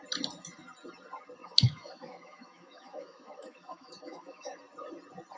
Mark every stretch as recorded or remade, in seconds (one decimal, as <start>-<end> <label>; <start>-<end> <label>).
0.0-1.4 recorded; 1.4-4.6 remade; 4.6-5.4 recorded